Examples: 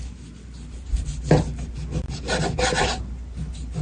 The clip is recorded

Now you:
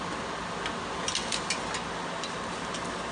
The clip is recorded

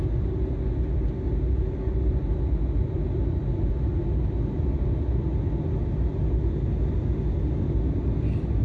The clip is recorded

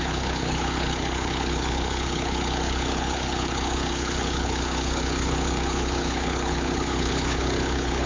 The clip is remade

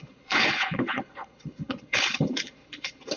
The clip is remade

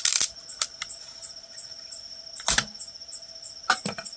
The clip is recorded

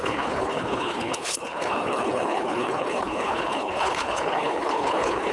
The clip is remade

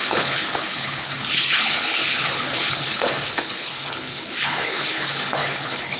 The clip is remade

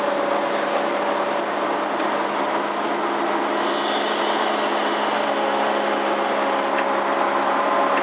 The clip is recorded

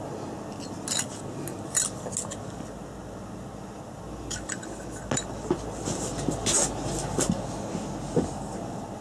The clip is recorded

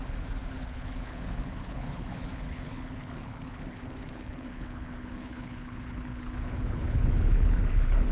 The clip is remade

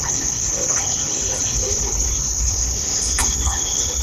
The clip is remade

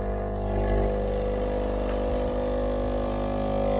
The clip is recorded